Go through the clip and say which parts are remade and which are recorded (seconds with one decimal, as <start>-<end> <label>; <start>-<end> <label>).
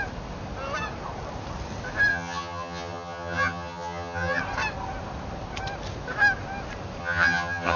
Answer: 0.0-2.1 recorded; 2.1-4.4 remade; 4.4-7.0 recorded; 7.0-7.8 remade